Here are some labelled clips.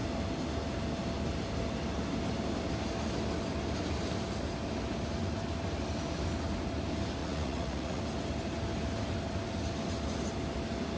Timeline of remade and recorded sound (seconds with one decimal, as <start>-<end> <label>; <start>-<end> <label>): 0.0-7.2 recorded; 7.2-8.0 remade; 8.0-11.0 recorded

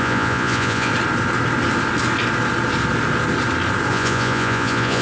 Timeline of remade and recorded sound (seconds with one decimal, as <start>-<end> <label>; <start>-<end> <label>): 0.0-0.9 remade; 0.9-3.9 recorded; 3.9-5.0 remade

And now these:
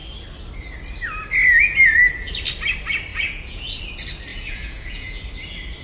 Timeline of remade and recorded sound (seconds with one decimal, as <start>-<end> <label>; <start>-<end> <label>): 0.0-3.1 recorded; 3.1-3.8 remade; 3.8-4.3 recorded; 4.3-5.2 remade; 5.2-5.8 recorded

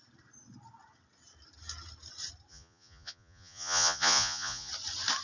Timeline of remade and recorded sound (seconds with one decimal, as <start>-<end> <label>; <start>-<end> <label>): 0.0-2.5 recorded; 2.5-4.7 remade; 4.7-5.2 recorded

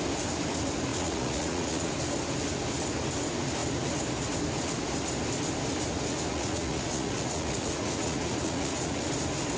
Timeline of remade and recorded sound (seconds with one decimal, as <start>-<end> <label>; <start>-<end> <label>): 0.0-0.9 recorded; 0.9-1.9 remade; 1.9-6.3 recorded; 6.3-9.1 remade; 9.1-9.6 recorded

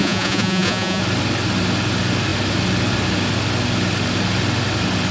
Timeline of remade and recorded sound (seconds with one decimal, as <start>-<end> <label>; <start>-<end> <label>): 0.0-1.0 remade; 1.0-5.1 recorded

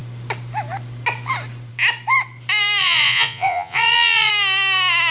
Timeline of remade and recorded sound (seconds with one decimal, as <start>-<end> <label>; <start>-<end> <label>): 0.0-2.8 recorded; 2.8-4.3 remade; 4.3-5.1 recorded

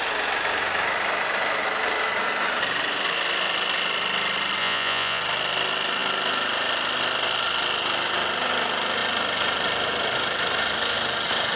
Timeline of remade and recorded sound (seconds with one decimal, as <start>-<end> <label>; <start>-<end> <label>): 0.0-4.6 recorded; 4.6-5.2 remade; 5.2-11.6 recorded